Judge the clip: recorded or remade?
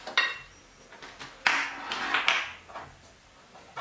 recorded